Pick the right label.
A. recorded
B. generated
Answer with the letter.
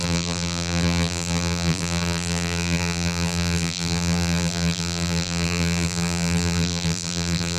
B